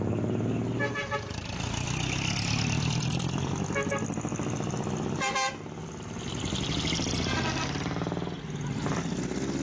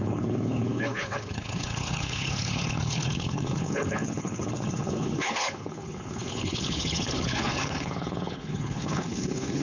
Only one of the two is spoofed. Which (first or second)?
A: second